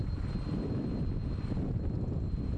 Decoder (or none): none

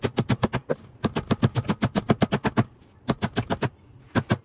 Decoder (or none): none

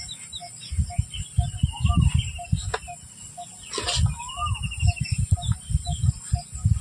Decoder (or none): none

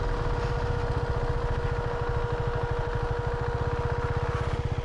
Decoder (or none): none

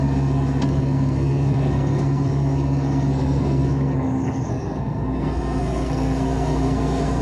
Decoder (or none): codec, SNAC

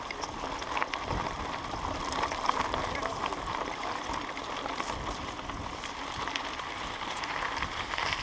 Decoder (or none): none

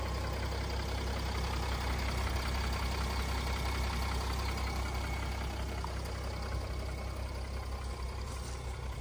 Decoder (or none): none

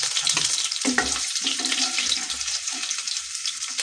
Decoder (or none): vocoder, BigVGAN v2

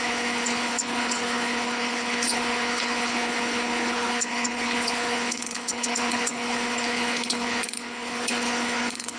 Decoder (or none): codec, HILCodec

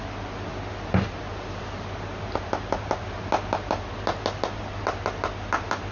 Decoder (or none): none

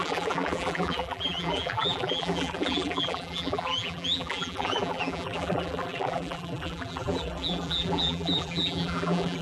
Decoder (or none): vocoder, BigVGAN v2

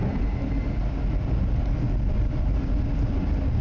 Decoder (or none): none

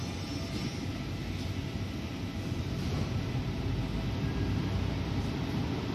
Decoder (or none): none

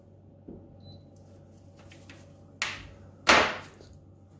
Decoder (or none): none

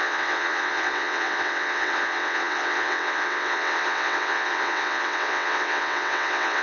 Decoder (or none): vocoder, WaveNeXt